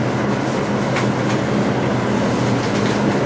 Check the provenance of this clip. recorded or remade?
recorded